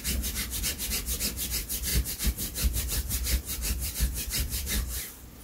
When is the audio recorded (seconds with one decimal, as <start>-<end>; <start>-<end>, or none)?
0.0-1.9; 5.0-5.4